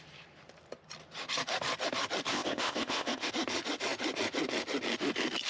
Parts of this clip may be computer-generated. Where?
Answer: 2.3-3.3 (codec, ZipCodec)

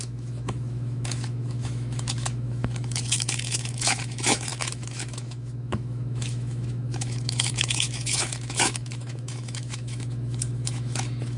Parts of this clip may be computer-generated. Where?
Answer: 0.0-11.4 (autoencoder, DAC-VAE)

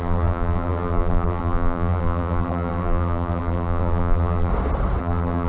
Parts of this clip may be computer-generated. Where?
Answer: 0.0-4.5 (vocoder, BigVGAN v2); 5.0-5.5

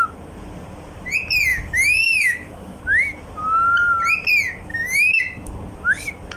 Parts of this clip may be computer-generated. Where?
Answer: 1.5-2.8 (autoencoder, DAC-VAE); 4.7-5.2

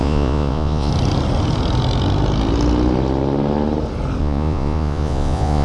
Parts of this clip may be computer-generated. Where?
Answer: 0.0-0.9 (vocoder, Vocos); 4.2-5.6

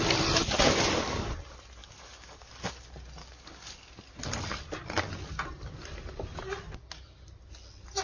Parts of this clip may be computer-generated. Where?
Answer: 1.8-2.5 (codec, DAC); 3.2-3.9

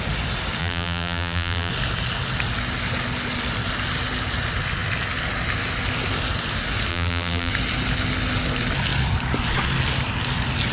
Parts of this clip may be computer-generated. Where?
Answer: 0.6-1.7 (vocoder, BigVGAN v2); 6.9-7.5